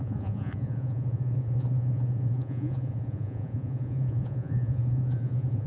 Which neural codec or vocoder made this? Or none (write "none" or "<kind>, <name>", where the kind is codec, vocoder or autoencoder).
vocoder, Vocos